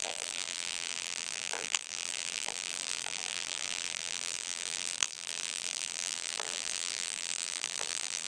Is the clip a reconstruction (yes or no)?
yes